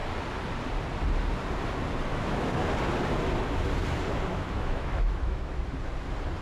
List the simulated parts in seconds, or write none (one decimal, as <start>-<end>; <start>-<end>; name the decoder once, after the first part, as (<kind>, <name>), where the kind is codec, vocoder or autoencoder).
2.1-2.6 (autoencoder, DAC-VAE); 4.3-5.5